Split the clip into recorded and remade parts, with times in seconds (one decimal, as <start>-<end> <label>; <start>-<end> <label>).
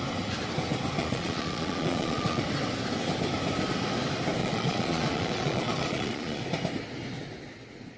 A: 0.0-1.0 recorded; 1.0-2.4 remade; 2.4-4.4 recorded; 4.4-6.4 remade; 6.4-8.0 recorded